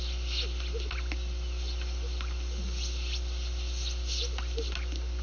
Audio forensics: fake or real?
real